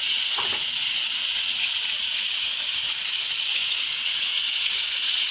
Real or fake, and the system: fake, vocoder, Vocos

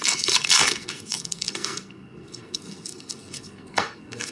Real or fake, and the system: fake, codec, SNAC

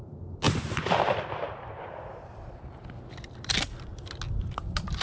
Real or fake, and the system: real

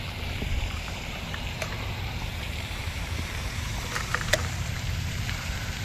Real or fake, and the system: fake, vocoder, BigVGAN v2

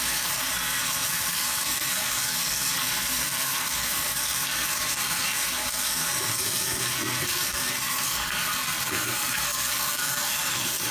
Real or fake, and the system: fake, codec, SNAC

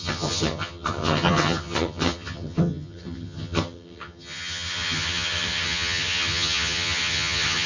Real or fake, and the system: fake, vocoder, HiFi-GAN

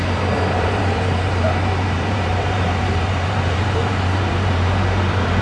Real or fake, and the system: fake, vocoder, BigVGAN v2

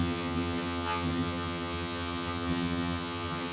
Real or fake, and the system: fake, vocoder, HiFi-GAN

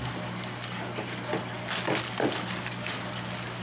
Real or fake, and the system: real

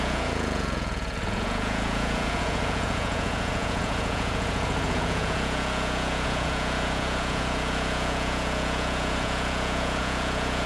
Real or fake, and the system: fake, vocoder, Vocos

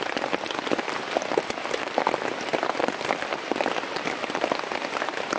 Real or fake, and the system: real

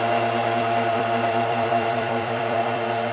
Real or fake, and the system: fake, vocoder, BigVGAN v2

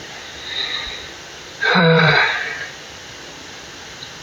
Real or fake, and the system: fake, vocoder, BigVGAN v2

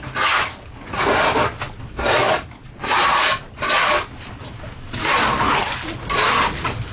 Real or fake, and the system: real